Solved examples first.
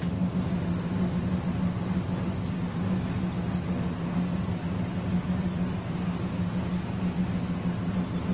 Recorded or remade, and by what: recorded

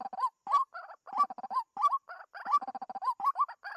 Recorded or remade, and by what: recorded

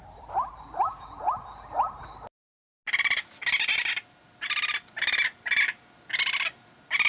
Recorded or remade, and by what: recorded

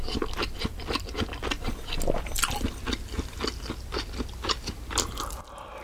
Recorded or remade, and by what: recorded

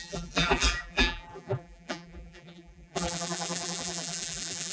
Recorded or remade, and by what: remade, vocoder, BigVGAN v2